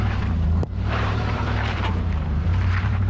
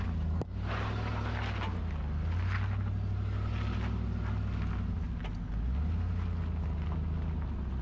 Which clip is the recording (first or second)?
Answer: second